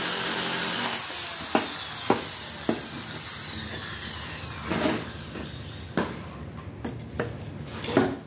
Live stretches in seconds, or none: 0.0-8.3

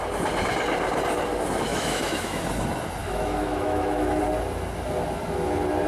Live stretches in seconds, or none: 0.0-1.7; 2.4-3.0; 4.2-5.9

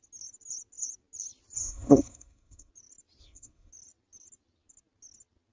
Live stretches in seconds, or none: 0.0-1.6; 2.7-3.2; 3.7-5.5